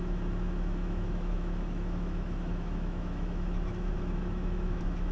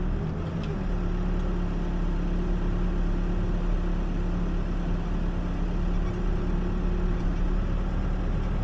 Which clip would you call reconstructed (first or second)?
first